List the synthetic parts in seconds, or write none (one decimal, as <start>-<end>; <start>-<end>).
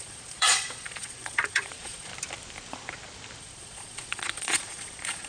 0.0-2.1; 3.4-5.3